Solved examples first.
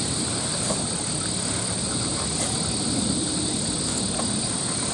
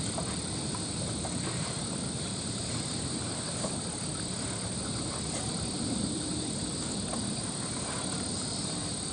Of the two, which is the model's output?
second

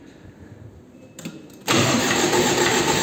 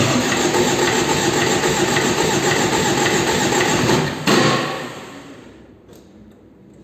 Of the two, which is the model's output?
first